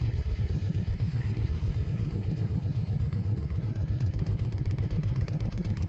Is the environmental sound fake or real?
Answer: fake